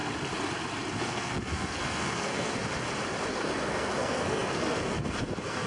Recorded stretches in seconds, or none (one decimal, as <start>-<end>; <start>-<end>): 0.0-1.0; 2.6-3.3